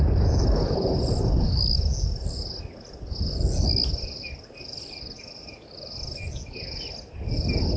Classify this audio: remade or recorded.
recorded